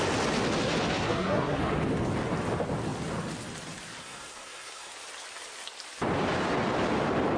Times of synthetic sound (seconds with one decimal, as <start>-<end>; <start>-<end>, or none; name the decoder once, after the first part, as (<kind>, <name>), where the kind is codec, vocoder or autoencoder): 1.0-1.6 (codec, SNAC); 4.0-4.9